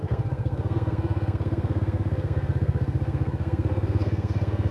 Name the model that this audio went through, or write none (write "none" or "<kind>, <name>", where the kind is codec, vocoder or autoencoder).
codec, SNAC